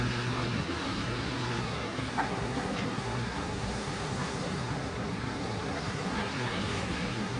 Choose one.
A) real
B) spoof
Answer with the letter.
B